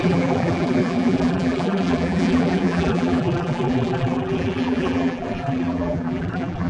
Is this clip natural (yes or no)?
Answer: no